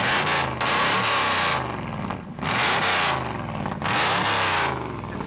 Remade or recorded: recorded